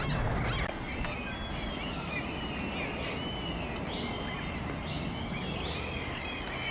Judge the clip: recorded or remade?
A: recorded